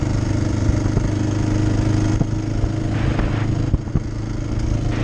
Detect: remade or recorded recorded